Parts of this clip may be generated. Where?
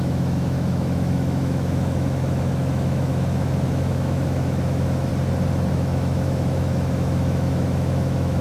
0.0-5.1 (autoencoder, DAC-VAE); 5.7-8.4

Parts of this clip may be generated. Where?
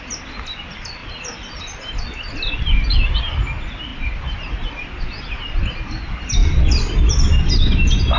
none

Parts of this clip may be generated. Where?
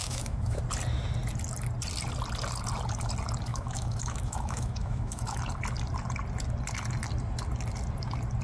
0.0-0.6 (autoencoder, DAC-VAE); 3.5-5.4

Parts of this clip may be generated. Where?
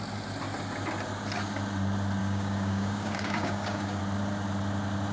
2.2-4.0 (codec, DAC)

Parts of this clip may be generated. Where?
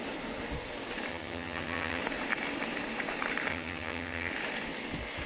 1.1-2.0 (vocoder, HiFi-GAN); 3.5-4.3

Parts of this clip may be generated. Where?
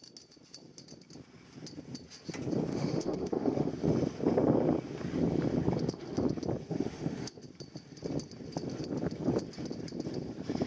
2.7-3.7 (autoencoder, DAC-VAE); 6.7-7.4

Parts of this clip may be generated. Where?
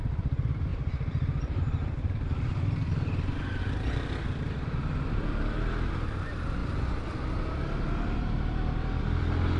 0.0-9.6 (vocoder, BigVGAN v2)